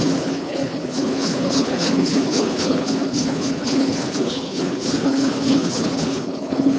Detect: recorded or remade remade